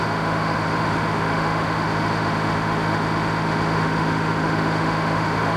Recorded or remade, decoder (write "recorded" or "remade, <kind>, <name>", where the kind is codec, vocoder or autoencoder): remade, autoencoder, DAC-VAE